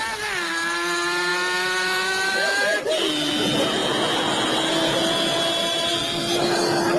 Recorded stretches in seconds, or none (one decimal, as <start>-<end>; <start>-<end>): 0.0-7.0